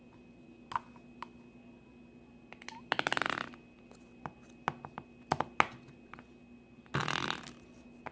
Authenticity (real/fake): real